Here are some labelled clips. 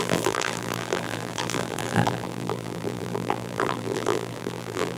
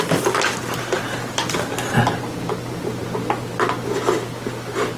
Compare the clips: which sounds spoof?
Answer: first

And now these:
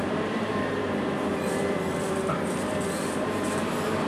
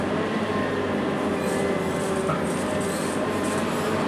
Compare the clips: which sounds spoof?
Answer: first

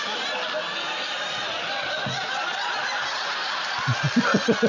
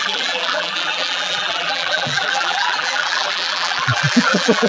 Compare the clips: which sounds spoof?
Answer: second